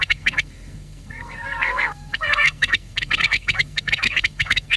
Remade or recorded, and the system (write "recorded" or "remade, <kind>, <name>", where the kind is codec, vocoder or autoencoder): remade, codec, SNAC